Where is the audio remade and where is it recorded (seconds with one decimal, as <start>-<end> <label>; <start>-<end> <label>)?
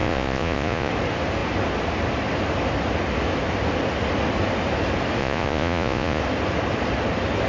0.0-0.9 remade; 0.9-5.2 recorded; 5.2-6.2 remade; 6.2-7.5 recorded